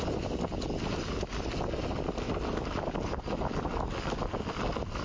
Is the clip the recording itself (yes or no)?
yes